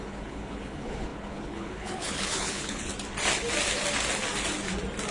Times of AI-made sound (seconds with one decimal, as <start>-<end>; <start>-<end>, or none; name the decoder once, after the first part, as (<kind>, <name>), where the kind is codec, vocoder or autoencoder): 0.0-2.9 (codec, HILCodec)